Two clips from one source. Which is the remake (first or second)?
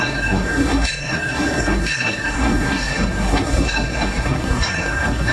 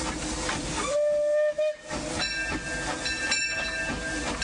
first